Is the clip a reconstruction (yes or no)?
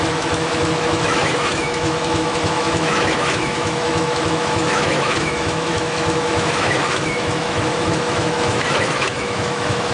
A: yes